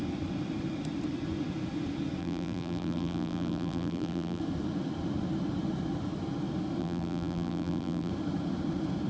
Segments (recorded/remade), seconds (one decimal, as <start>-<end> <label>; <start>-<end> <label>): 0.0-2.2 recorded; 2.2-4.4 remade; 4.4-6.8 recorded; 6.8-8.1 remade; 8.1-9.1 recorded